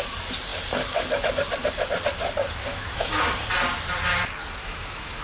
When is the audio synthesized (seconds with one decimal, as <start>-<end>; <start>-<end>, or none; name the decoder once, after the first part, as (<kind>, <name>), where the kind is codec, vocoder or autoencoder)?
2.7-3.3 (autoencoder, DAC-VAE); 4.6-5.2